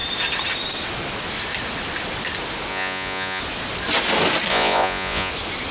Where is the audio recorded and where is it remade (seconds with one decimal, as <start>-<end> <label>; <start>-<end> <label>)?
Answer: 0.0-2.7 recorded; 2.7-3.4 remade; 3.4-4.5 recorded; 4.5-5.3 remade; 5.3-5.7 recorded